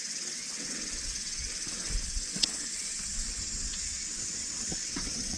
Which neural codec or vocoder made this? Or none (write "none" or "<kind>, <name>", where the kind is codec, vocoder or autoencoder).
vocoder, WaveNeXt